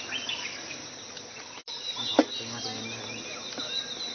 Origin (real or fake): real